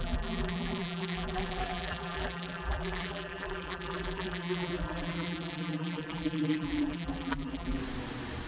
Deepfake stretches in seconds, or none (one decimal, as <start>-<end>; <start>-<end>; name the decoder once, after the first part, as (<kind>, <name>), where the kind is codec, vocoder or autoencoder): 0.0-7.8 (vocoder, BigVGAN v2)